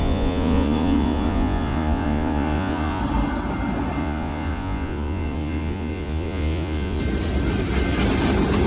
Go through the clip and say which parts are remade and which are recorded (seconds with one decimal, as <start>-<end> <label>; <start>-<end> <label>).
0.0-3.0 remade; 3.0-4.0 recorded; 4.0-7.0 remade; 7.0-8.7 recorded